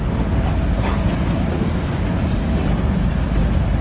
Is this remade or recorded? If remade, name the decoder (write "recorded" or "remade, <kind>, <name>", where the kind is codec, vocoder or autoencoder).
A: recorded